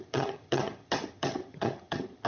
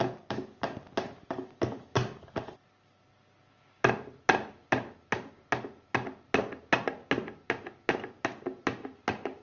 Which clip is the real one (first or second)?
second